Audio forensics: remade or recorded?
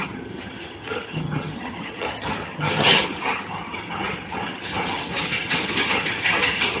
remade